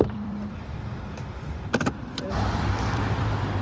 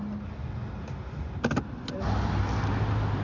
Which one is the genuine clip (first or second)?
second